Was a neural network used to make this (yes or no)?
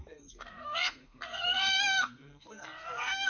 yes